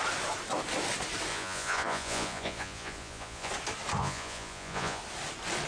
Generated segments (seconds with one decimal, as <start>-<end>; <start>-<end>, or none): 1.3-3.5; 4.0-5.0